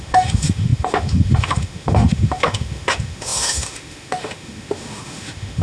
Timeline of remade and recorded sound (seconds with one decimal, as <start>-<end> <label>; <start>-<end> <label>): 0.0-5.6 remade